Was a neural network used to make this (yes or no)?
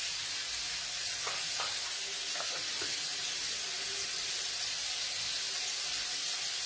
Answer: no